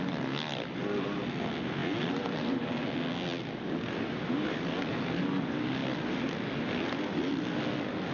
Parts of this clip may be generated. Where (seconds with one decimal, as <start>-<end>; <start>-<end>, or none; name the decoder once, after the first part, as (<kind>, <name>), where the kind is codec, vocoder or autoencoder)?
none